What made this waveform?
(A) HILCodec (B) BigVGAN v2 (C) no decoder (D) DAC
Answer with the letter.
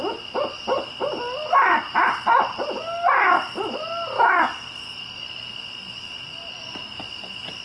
C